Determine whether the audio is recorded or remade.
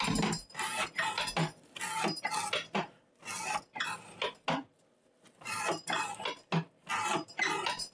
recorded